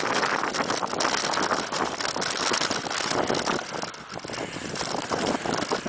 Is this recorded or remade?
recorded